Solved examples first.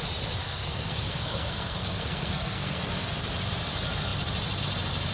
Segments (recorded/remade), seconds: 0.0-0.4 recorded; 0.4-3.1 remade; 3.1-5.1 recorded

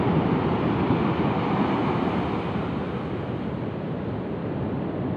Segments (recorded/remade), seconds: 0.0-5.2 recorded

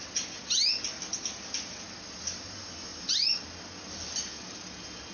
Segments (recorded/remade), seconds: 0.0-5.1 recorded

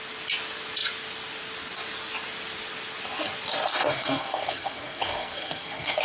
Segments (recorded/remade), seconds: 0.0-3.7 recorded; 3.7-6.0 remade